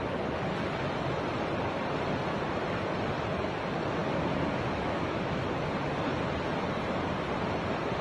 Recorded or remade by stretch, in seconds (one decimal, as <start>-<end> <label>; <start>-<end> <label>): 0.0-4.0 recorded; 4.0-5.4 remade; 5.4-8.0 recorded